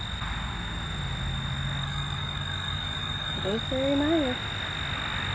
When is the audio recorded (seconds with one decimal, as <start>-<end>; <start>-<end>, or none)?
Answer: 0.0-1.8; 3.6-5.3